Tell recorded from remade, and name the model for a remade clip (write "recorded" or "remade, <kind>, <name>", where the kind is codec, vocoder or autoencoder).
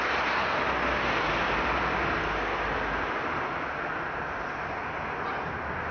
recorded